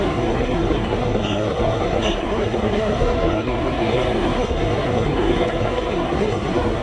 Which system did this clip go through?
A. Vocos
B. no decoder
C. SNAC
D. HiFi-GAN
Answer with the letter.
C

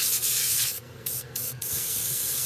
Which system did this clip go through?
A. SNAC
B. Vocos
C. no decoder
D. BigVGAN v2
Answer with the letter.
A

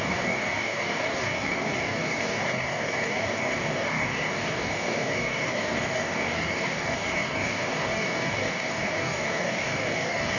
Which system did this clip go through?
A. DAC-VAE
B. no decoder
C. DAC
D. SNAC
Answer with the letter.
C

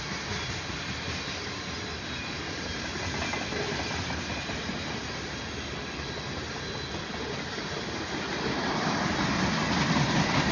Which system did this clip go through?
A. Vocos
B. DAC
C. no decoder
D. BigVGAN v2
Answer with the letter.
C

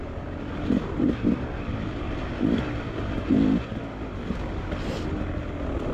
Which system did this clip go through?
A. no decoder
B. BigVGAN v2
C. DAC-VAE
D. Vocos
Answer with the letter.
A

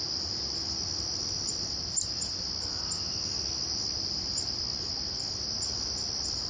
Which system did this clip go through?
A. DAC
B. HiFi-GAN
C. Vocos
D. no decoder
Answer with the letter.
D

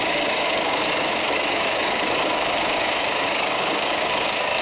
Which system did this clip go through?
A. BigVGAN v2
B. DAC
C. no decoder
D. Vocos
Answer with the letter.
B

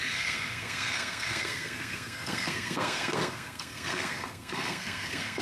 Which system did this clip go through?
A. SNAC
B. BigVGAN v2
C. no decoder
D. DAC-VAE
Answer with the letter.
A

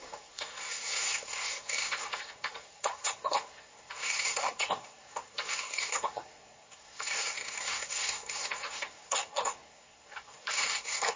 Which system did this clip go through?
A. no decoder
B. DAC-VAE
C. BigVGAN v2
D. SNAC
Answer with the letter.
D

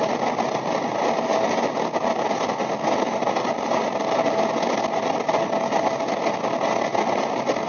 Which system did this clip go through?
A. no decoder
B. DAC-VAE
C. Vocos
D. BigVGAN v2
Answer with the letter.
A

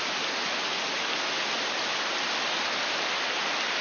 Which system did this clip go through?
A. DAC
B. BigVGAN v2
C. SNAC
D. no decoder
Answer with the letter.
D